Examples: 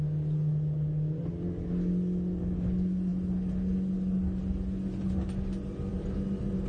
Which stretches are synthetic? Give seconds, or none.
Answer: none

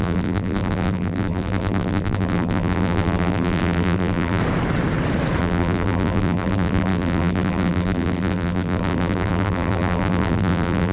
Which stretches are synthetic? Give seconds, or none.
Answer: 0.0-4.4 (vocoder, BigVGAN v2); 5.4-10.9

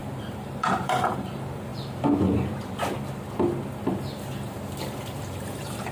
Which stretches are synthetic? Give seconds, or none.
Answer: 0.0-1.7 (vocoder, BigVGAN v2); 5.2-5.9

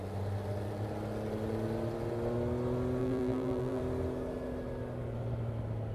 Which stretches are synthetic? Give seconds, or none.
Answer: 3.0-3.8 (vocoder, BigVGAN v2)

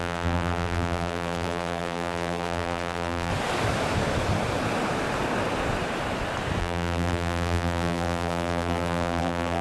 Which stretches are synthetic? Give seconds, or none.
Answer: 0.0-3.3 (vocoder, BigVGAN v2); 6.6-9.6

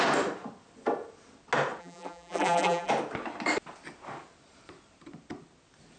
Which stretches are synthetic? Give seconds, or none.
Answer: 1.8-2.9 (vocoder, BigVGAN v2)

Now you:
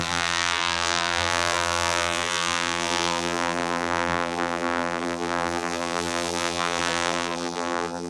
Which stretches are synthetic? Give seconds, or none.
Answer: 0.0-8.1 (vocoder, BigVGAN v2)

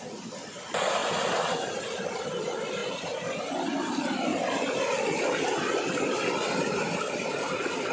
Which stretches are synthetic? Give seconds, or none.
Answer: 4.3-5.4 (vocoder, BigVGAN v2)